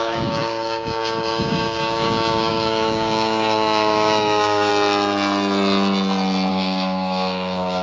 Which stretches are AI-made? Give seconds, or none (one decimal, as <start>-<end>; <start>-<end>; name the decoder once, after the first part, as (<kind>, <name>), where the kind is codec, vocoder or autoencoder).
0.0-4.7 (codec, DAC); 6.5-7.8